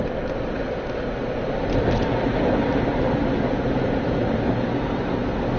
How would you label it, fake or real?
real